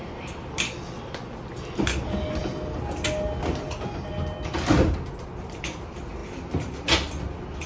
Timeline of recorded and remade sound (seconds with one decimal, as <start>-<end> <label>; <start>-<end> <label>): 0.0-7.7 recorded